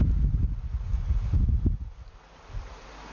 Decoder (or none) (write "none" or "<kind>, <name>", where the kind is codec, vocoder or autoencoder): none